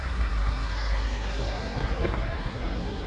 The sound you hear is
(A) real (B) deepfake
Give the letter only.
B